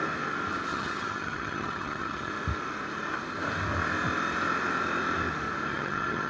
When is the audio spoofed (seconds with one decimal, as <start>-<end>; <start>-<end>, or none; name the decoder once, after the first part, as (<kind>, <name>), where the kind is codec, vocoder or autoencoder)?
0.7-2.3 (vocoder, HiFi-GAN); 5.7-6.3